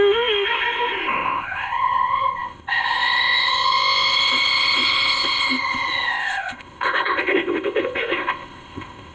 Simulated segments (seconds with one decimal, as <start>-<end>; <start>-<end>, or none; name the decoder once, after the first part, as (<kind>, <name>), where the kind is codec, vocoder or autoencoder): 0.0-9.1 (codec, ZipCodec)